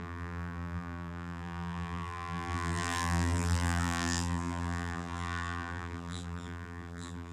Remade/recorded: remade